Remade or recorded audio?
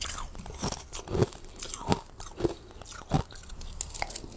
recorded